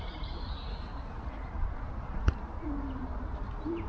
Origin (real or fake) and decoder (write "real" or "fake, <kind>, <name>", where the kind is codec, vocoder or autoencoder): fake, vocoder, BigVGAN v2